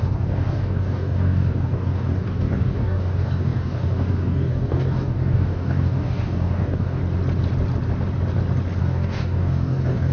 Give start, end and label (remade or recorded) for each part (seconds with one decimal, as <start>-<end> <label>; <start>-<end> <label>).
0.0-7.0 remade; 7.0-8.8 recorded; 8.8-10.1 remade